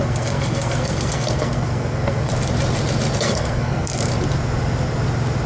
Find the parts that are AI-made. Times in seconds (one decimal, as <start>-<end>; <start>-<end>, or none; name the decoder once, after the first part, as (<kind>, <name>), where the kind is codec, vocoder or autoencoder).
0.0-2.3 (codec, SNAC); 3.2-4.1

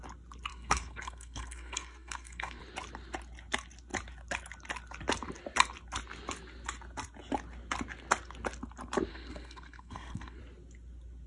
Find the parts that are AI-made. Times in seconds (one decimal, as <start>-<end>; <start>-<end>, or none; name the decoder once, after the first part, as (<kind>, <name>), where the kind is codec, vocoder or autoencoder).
0.5-2.6 (codec, SNAC); 9.1-10.4

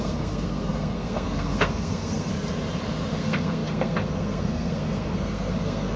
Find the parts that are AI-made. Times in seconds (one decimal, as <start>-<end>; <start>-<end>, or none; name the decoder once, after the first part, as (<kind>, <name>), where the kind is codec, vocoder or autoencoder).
0.0-2.3 (codec, SNAC); 3.1-6.0

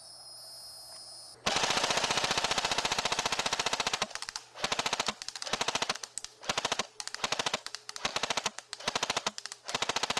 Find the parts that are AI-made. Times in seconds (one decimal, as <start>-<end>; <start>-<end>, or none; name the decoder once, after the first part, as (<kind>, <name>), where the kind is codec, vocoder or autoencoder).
none

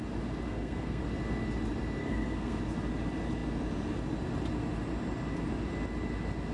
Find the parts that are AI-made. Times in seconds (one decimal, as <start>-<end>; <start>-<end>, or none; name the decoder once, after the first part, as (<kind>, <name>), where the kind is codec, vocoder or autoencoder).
0.5-1.0 (codec, SNAC); 2.0-2.6

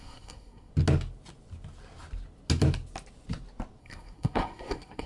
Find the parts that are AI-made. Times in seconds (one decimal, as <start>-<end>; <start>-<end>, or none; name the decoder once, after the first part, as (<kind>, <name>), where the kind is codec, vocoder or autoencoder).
0.0-0.7 (codec, SNAC); 3.8-5.1

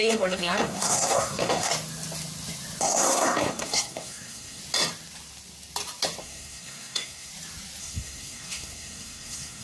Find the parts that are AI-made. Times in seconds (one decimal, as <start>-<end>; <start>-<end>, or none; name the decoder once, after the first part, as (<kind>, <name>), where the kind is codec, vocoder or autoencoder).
0.0-1.7 (codec, SNAC); 2.8-4.6; 6.2-7.3; 7.8-9.6